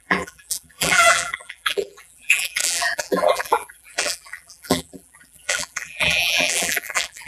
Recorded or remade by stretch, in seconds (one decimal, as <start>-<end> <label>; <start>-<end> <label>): 0.0-7.3 remade